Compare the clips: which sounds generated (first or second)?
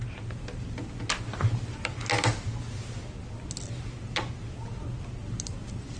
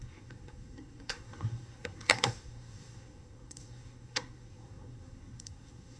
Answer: second